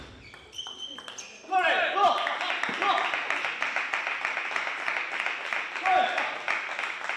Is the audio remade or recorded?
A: recorded